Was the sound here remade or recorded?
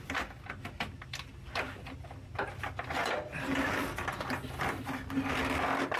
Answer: remade